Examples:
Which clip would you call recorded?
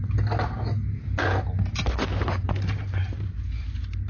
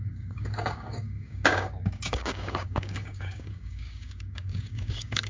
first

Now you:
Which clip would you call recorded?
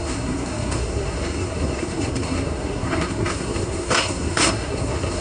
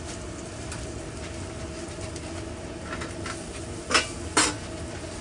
second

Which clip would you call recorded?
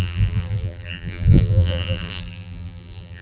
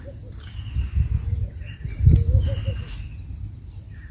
second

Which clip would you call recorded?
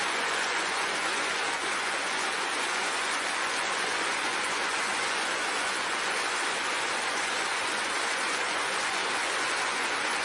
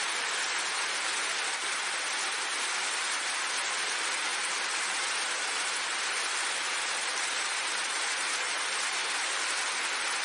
second